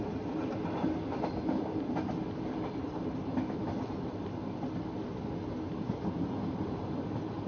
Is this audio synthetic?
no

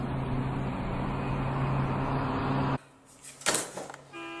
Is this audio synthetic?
no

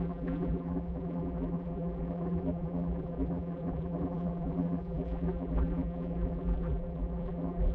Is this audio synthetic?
yes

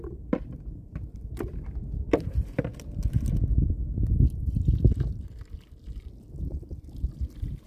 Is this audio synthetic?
yes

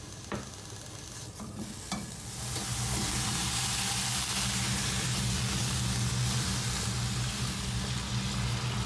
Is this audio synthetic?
no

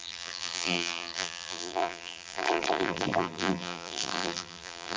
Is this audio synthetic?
yes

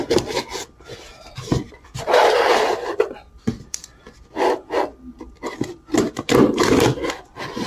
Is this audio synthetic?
yes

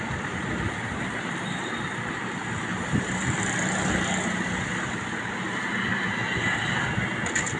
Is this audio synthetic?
no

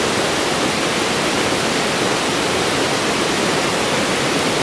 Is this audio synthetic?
no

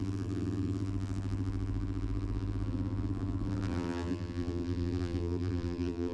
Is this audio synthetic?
yes